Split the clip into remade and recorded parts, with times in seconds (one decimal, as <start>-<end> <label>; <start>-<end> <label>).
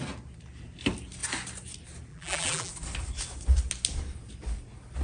0.0-2.1 recorded; 2.1-2.7 remade; 2.7-5.0 recorded